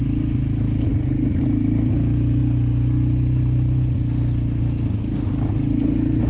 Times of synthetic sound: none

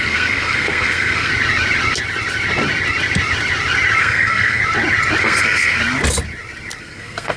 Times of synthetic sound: 0.0-1.3 (codec, SNAC); 4.0-4.6; 5.2-5.8; 6.8-7.4

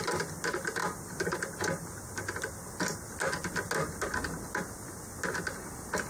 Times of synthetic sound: none

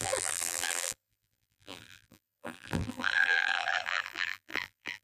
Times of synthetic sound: 0.0-5.0 (vocoder, BigVGAN v2)